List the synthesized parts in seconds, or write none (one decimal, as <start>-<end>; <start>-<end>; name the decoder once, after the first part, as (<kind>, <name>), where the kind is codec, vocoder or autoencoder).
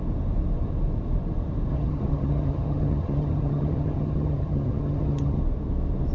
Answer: 1.7-5.4 (vocoder, HiFi-GAN)